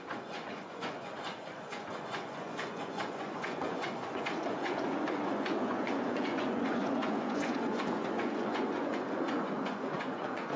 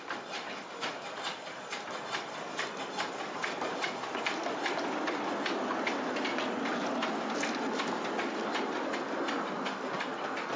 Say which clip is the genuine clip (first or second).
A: second